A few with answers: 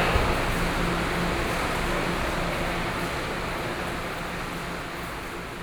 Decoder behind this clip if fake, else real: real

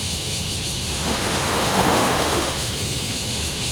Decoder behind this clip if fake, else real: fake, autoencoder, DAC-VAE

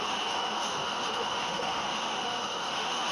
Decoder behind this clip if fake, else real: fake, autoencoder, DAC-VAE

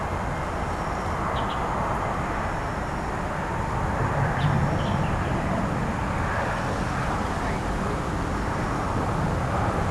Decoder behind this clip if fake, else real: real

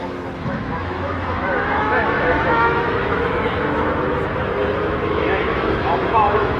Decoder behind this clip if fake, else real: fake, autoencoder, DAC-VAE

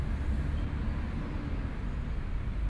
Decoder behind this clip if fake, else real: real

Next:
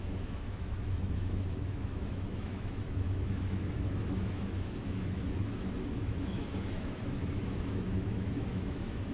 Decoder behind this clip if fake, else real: fake, autoencoder, DAC-VAE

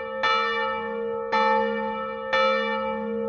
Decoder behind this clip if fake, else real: real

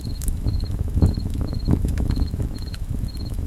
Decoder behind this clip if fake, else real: fake, autoencoder, DAC-VAE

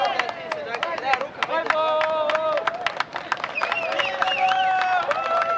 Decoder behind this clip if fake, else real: real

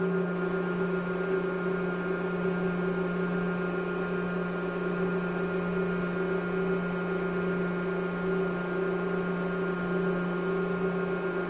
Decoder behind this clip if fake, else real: real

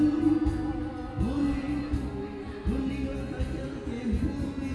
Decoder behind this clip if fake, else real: real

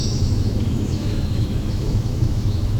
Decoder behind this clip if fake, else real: fake, autoencoder, DAC-VAE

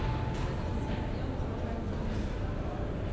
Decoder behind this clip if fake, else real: real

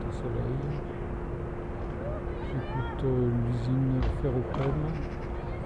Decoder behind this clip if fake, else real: real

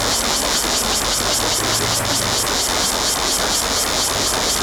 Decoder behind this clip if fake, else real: real